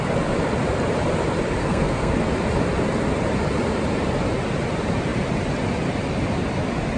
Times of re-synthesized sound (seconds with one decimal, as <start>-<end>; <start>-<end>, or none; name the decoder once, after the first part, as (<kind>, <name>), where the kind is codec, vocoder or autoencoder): 1.6-2.1 (codec, SNAC)